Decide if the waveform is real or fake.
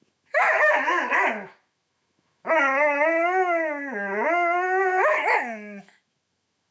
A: fake